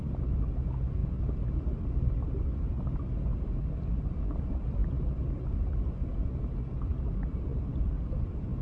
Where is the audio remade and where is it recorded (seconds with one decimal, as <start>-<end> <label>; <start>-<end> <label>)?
0.0-8.6 recorded